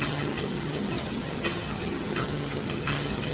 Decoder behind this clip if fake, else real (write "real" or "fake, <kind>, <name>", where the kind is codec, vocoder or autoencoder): fake, vocoder, HiFi-GAN